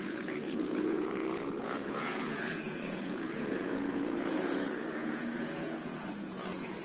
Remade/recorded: remade